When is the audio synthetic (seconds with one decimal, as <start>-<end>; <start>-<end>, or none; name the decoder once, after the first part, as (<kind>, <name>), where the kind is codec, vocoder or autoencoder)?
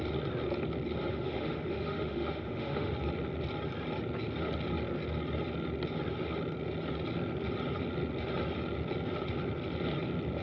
1.1-2.9 (autoencoder, DAC-VAE)